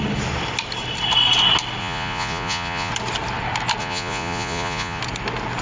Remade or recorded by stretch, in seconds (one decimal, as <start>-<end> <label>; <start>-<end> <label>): 0.0-1.8 recorded; 1.8-2.9 remade; 2.9-3.8 recorded; 3.8-5.0 remade; 5.0-5.6 recorded